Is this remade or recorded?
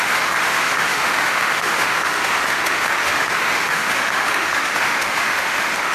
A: remade